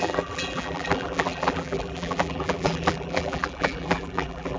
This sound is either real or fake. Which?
fake